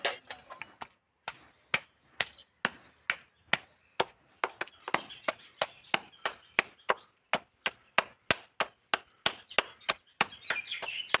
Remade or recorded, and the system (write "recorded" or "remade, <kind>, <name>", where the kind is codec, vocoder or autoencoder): recorded